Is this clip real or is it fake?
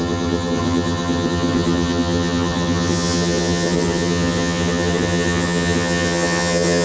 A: fake